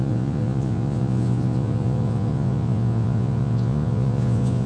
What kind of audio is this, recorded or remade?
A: remade